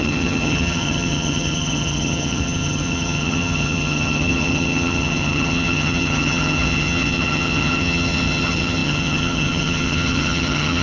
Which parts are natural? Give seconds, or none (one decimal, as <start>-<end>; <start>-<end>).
none